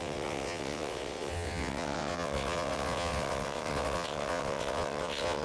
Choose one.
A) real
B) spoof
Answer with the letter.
B